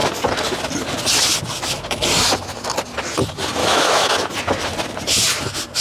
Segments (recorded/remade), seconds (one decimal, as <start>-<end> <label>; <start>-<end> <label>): 0.0-3.6 recorded; 3.6-4.1 remade; 4.1-5.8 recorded